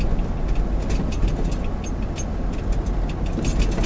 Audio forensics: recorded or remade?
recorded